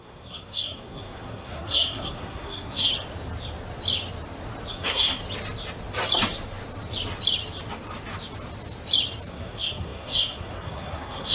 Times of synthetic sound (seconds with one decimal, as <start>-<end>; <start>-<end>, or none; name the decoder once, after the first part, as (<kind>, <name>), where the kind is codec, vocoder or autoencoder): 0.0-2.9 (codec, SNAC); 4.7-5.2; 9.3-11.3